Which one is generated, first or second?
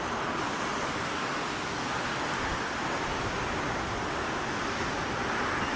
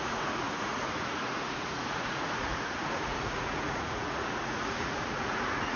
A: second